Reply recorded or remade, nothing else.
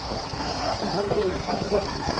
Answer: remade